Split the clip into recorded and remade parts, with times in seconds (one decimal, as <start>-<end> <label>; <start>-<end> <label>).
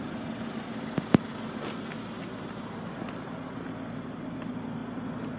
0.0-5.4 recorded